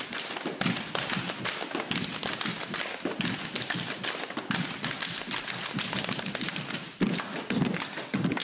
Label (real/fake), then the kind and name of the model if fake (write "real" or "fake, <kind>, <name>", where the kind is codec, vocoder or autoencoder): real